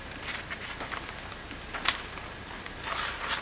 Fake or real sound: real